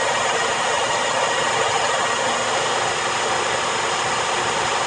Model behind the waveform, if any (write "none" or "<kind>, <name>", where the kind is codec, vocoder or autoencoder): none